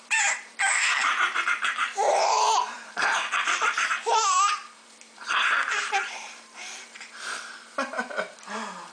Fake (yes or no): yes